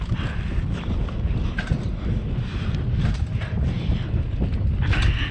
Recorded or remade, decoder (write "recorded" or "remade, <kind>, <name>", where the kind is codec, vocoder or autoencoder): recorded